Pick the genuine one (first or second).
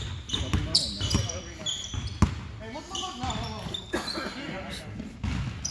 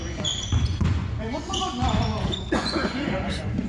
first